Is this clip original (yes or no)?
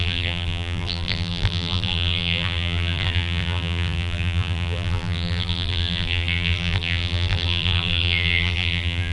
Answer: no